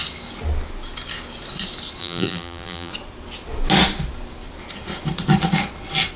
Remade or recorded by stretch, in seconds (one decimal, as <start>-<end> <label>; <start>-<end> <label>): 0.0-2.0 recorded; 2.0-2.9 remade; 2.9-6.2 recorded